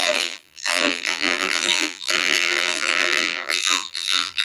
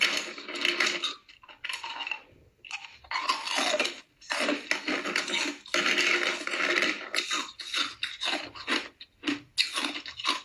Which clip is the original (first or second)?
second